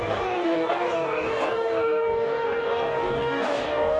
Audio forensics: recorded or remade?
remade